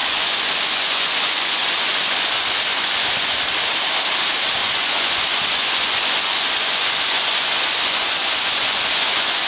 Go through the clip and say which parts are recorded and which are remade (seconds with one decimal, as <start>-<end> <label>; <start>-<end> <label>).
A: 0.0-3.4 remade; 3.4-4.6 recorded; 4.6-9.5 remade